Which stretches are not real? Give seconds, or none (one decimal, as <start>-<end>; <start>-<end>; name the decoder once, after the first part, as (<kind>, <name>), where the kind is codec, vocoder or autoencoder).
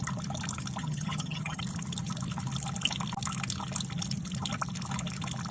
0.8-1.6 (vocoder, HiFi-GAN)